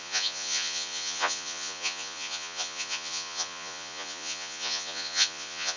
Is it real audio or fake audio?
fake